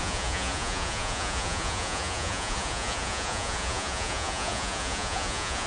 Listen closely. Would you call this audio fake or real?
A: fake